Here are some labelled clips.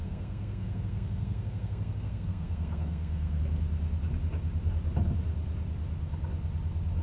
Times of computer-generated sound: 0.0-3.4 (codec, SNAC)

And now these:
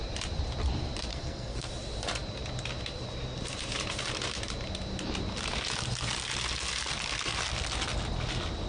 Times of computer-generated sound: 1.1-1.7 (codec, SNAC)

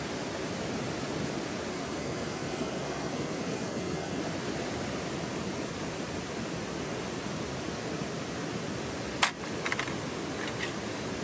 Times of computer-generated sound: 1.7-4.2 (codec, SNAC)

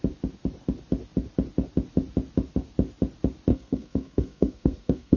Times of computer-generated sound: 3.5-5.2 (codec, SNAC)

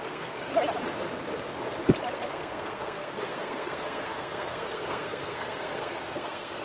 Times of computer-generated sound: 0.0-0.5 (codec, SNAC); 2.1-6.6